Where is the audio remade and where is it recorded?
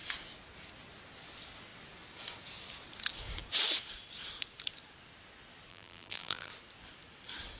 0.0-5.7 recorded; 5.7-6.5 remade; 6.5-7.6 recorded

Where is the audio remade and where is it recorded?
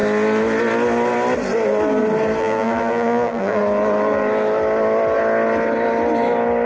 0.0-2.4 recorded; 2.4-3.6 remade; 3.6-6.7 recorded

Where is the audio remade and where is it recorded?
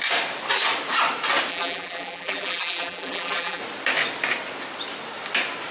0.0-1.5 recorded; 1.5-3.6 remade; 3.6-5.7 recorded